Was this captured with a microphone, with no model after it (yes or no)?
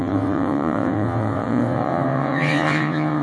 no